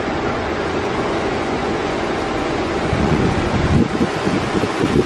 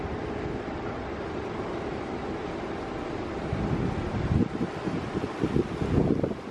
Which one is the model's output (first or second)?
first